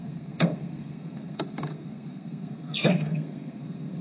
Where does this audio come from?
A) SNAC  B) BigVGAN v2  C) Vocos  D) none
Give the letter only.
A